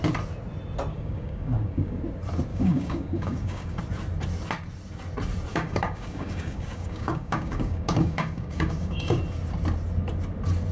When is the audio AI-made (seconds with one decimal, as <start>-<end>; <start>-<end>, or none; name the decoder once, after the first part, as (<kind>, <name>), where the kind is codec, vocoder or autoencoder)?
0.9-2.0 (codec, DAC); 2.5-3.8; 5.5-9.2